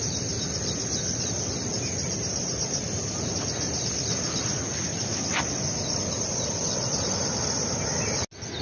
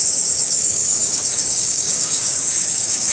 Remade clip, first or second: second